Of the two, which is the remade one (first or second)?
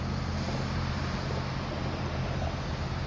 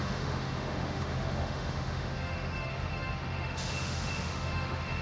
second